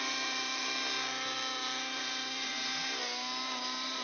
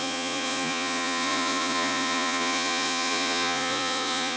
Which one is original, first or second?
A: first